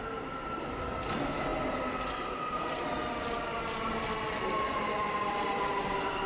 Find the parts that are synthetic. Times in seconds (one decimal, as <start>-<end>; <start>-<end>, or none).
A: none